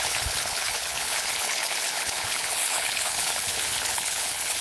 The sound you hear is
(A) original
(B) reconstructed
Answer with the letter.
B